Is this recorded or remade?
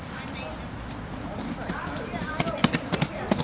recorded